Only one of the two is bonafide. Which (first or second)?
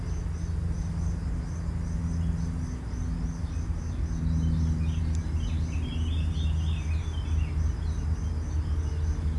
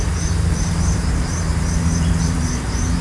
first